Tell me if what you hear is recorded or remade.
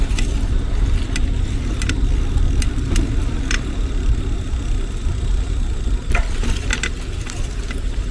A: recorded